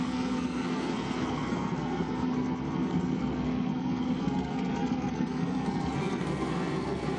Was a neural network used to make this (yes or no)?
yes